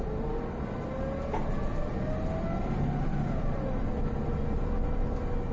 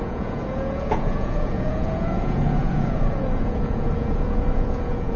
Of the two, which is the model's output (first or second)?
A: second